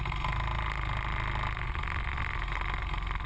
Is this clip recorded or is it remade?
recorded